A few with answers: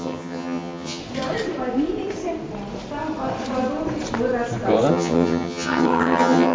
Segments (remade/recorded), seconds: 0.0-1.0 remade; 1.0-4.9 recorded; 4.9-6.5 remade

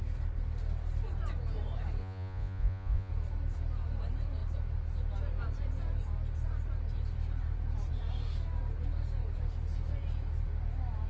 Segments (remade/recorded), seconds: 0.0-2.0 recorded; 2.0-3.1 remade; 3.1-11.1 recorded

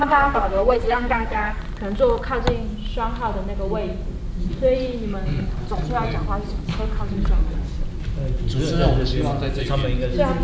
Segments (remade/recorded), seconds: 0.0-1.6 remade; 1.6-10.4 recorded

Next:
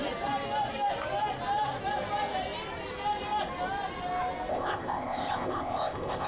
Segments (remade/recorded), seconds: 0.0-4.5 recorded; 4.5-6.3 remade

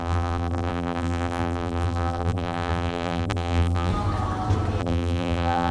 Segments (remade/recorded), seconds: 0.0-3.9 remade; 3.9-4.8 recorded; 4.8-5.7 remade

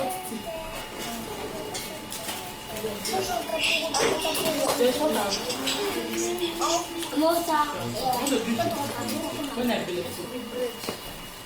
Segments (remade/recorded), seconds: 0.0-9.8 recorded; 9.8-10.3 remade; 10.3-11.5 recorded

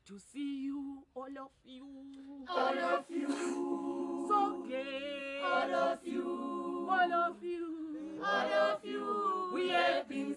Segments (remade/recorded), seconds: 0.0-2.2 recorded; 2.2-4.0 remade; 4.0-10.4 recorded